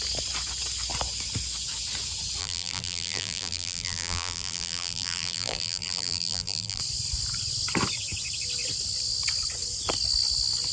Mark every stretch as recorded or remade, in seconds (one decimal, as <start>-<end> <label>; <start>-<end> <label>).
0.0-2.4 recorded; 2.4-6.8 remade; 6.8-10.7 recorded